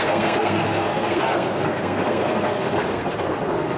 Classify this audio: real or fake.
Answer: fake